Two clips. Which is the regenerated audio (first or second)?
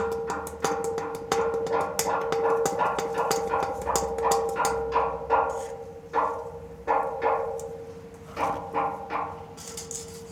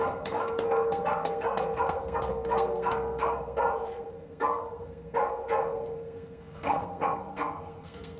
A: second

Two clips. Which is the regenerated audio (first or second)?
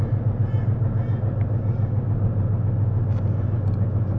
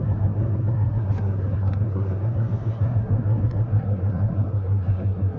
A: second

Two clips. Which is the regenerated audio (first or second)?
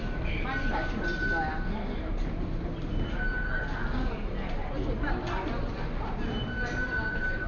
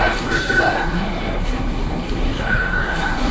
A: second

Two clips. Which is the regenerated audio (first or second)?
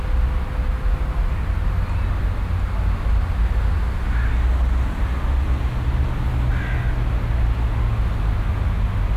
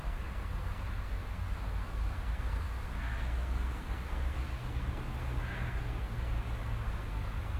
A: second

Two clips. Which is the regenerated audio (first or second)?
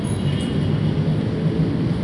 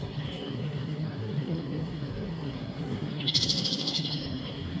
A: second